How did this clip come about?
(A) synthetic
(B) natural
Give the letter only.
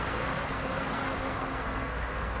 A